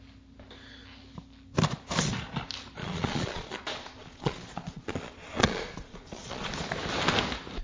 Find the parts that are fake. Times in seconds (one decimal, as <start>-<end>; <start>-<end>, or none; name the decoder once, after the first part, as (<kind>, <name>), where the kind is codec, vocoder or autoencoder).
2.8-6.5 (vocoder, Vocos)